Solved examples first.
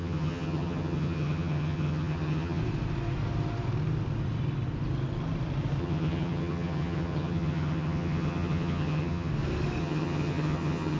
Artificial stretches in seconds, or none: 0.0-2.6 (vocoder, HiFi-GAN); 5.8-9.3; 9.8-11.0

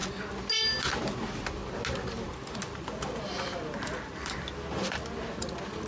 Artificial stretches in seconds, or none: none

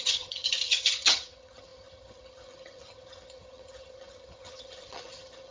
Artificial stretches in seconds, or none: 0.0-5.5 (vocoder, HiFi-GAN)

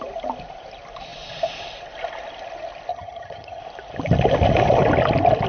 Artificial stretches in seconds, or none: 2.9-3.6 (vocoder, HiFi-GAN)

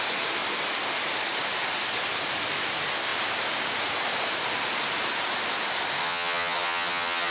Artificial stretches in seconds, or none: 6.0-7.3 (vocoder, HiFi-GAN)

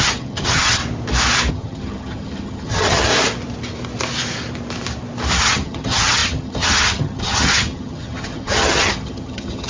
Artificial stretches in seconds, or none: 0.0-0.8 (vocoder, HiFi-GAN); 1.5-3.1; 5.4-9.7

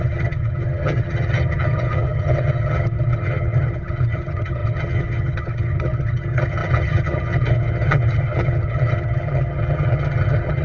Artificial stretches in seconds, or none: 0.0-10.6 (vocoder, HiFi-GAN)

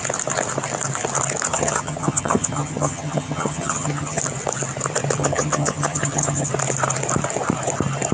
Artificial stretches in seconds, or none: 1.5-4.2 (vocoder, HiFi-GAN); 5.2-6.5